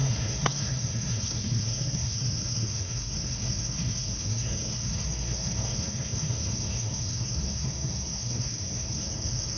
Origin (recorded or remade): remade